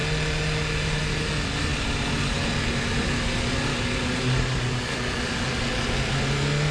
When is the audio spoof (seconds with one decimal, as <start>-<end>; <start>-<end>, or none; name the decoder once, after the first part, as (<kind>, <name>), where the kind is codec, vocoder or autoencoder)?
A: none